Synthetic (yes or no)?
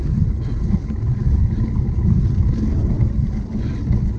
no